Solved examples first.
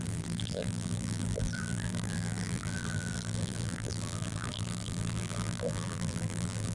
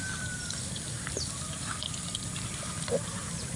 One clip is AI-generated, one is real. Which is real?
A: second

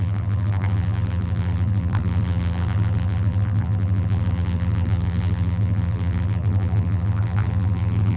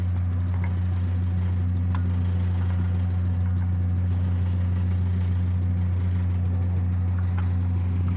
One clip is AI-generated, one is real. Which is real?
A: second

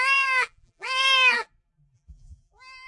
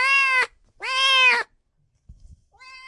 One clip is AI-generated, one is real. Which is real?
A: second